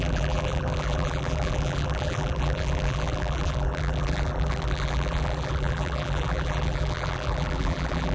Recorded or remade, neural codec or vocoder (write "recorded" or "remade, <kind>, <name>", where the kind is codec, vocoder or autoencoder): remade, vocoder, BigVGAN v2